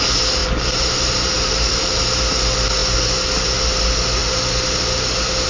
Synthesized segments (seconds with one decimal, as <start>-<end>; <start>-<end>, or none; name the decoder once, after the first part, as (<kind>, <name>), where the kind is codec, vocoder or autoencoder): 0.4-2.0 (vocoder, BigVGAN v2)